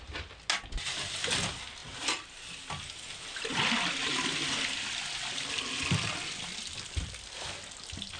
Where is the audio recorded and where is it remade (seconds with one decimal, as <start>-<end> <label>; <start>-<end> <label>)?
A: 0.0-8.2 recorded